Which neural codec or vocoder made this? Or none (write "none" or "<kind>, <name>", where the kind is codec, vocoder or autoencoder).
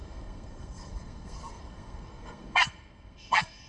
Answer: codec, SNAC